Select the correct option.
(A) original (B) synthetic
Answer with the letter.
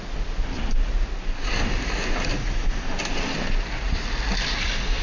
A